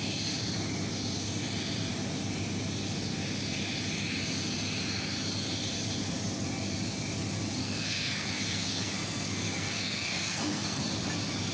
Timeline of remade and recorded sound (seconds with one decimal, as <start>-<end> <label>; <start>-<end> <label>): 0.0-7.6 recorded; 7.6-10.8 remade; 10.8-11.5 recorded